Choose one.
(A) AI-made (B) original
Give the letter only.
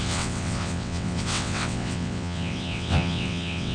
A